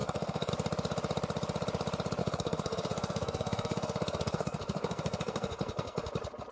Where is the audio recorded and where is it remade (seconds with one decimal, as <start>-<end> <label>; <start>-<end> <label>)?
0.0-0.5 remade; 0.5-2.2 recorded; 2.2-6.1 remade; 6.1-6.5 recorded